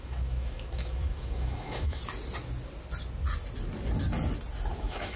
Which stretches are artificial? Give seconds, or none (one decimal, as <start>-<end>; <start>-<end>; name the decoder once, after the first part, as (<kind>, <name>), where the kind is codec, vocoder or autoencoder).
0.0-2.0 (autoencoder, DAC-VAE); 4.8-5.2